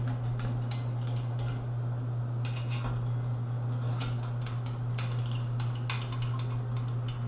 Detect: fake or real real